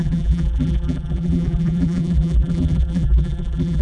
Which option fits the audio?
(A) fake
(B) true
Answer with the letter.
A